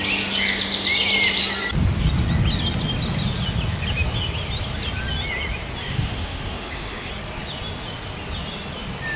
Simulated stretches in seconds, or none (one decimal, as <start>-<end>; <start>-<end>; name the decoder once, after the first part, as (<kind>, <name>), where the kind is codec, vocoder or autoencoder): 5.8-7.1 (autoencoder, DAC-VAE)